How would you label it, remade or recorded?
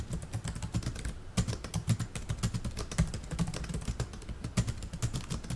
recorded